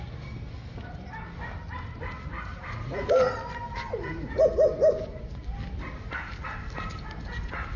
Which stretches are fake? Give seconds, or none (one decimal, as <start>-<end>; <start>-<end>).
none